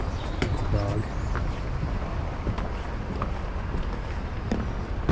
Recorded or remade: recorded